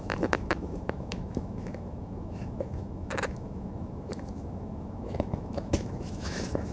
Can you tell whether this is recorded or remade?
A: remade